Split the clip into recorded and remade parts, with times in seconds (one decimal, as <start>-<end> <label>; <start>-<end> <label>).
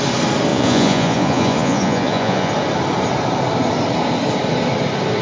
0.0-0.5 recorded; 0.5-2.5 remade; 2.5-5.2 recorded